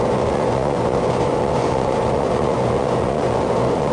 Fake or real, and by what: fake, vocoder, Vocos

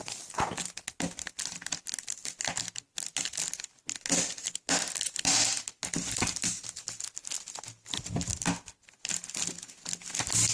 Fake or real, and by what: real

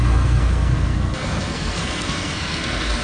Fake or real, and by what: fake, codec, SNAC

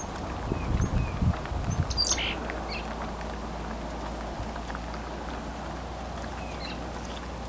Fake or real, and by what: real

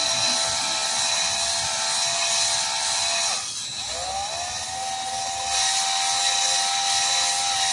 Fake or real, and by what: real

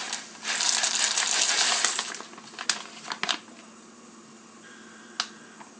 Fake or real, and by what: real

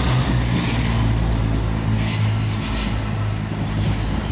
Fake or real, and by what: real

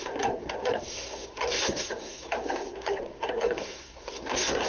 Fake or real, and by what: fake, codec, SNAC